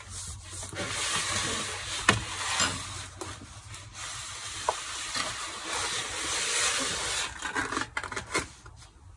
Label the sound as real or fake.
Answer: real